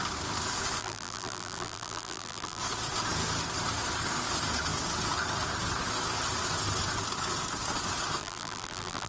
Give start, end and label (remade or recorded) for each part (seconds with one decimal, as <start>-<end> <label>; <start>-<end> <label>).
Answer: 0.0-0.8 recorded; 0.8-2.6 remade; 2.6-8.2 recorded; 8.2-9.1 remade